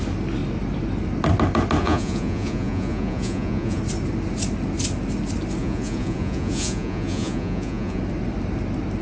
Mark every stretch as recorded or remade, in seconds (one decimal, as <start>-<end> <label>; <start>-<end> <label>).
0.0-1.8 recorded; 1.8-3.8 remade; 3.8-5.6 recorded; 5.6-8.0 remade; 8.0-9.0 recorded